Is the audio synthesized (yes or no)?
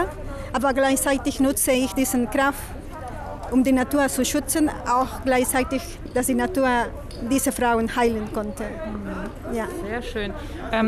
no